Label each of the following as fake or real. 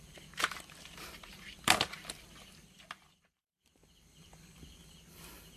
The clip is fake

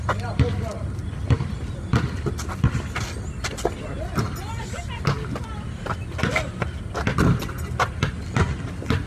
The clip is real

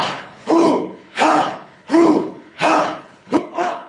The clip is fake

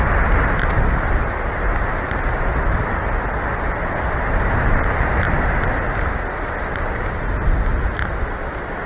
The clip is real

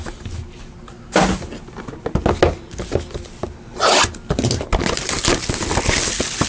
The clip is real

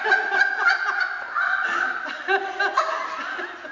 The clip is real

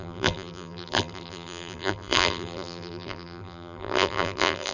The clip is fake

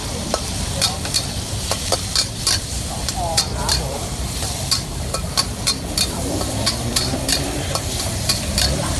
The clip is fake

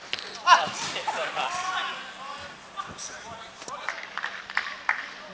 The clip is real